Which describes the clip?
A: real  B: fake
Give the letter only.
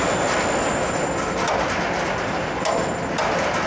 A